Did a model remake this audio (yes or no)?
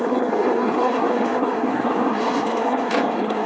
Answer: yes